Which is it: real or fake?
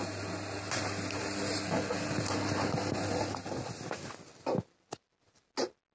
real